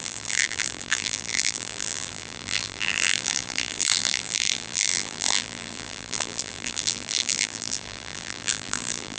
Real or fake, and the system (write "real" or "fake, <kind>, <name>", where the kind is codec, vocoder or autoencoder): fake, vocoder, BigVGAN v2